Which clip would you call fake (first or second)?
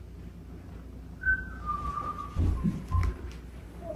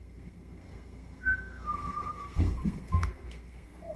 second